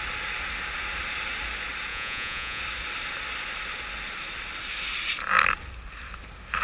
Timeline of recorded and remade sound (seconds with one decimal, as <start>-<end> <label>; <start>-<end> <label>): 0.0-1.9 recorded; 1.9-2.6 remade; 2.6-6.6 recorded